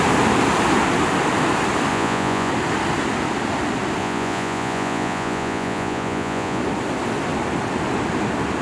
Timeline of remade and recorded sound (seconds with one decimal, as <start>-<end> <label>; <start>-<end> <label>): 0.0-1.9 recorded; 1.9-2.5 remade; 2.5-4.0 recorded; 4.0-6.6 remade; 6.6-8.6 recorded